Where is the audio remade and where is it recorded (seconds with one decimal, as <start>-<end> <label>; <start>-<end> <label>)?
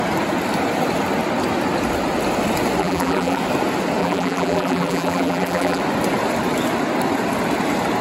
0.0-2.8 recorded; 2.8-3.4 remade; 3.4-4.0 recorded; 4.0-5.8 remade; 5.8-8.0 recorded